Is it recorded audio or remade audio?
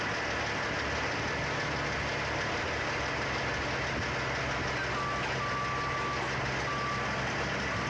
recorded